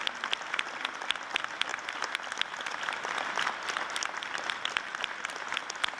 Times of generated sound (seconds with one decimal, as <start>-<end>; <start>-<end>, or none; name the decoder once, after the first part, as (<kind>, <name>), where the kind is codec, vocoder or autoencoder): none